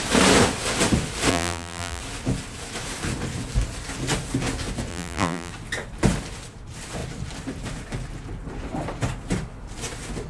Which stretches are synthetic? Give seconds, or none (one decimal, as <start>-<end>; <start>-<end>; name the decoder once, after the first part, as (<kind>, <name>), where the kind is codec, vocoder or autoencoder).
1.3-2.0 (vocoder, BigVGAN v2); 4.9-5.5

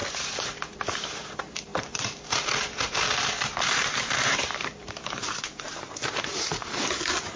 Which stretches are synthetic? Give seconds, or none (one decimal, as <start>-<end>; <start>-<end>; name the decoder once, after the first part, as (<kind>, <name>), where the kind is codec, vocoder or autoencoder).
0.0-7.4 (vocoder, BigVGAN v2)